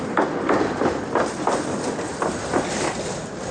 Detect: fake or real real